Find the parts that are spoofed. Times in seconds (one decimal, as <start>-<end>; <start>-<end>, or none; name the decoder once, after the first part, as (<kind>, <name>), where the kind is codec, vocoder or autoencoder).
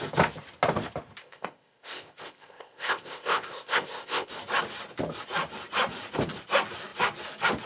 1.2-4.3 (codec, ZipCodec)